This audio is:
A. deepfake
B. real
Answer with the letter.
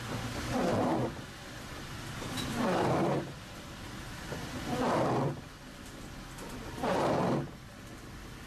B